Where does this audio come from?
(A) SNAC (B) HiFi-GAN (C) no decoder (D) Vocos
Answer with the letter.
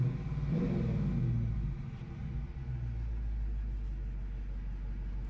C